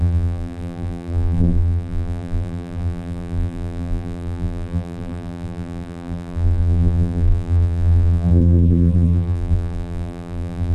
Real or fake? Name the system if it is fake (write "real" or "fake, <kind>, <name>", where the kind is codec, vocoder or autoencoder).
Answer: fake, vocoder, BigVGAN v2